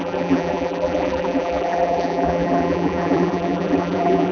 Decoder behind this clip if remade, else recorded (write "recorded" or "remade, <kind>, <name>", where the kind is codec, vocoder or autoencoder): remade, vocoder, BigVGAN v2